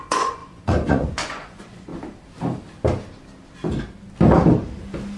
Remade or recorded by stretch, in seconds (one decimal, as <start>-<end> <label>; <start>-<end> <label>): 0.0-1.9 remade; 1.9-5.2 recorded

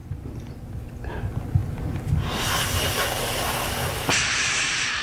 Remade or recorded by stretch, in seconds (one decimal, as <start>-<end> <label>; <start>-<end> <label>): 0.0-5.0 recorded

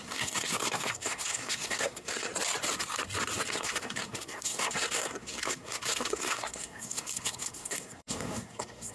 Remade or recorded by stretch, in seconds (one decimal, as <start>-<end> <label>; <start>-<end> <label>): 0.0-2.3 remade; 2.3-3.5 recorded; 3.5-8.9 remade

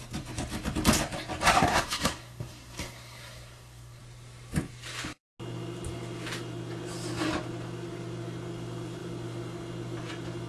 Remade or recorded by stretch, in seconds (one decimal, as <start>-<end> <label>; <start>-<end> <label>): 0.0-1.5 recorded; 1.5-4.0 remade; 4.0-10.5 recorded

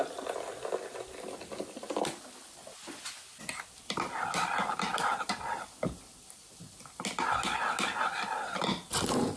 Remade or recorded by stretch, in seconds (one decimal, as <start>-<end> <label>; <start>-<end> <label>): 0.0-9.4 recorded

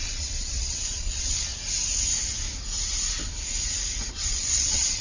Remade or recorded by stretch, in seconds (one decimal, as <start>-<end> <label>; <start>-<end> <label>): 0.0-1.5 remade; 1.5-4.1 recorded; 4.1-5.0 remade

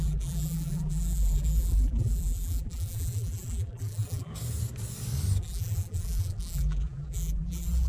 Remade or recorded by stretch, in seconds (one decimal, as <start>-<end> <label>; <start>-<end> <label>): 0.0-4.3 remade; 4.3-5.4 recorded; 5.4-7.9 remade

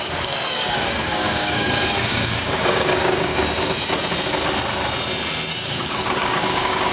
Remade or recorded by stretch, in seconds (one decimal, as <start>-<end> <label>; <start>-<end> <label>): 0.0-3.3 remade; 3.3-5.5 recorded; 5.5-6.9 remade